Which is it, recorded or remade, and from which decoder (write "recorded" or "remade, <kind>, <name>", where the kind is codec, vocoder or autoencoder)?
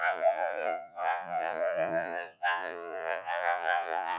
remade, vocoder, Vocos